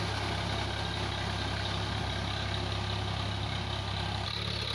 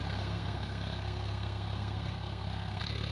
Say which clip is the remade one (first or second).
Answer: second